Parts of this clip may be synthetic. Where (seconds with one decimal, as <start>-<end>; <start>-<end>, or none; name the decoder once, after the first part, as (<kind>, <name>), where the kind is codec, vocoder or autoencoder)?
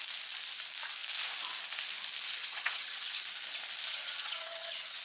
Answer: 2.4-3.1 (vocoder, HiFi-GAN); 3.9-5.0